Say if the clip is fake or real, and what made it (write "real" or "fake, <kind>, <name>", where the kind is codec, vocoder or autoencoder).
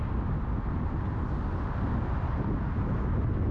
real